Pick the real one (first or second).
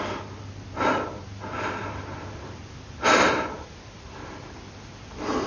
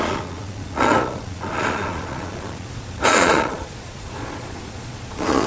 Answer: first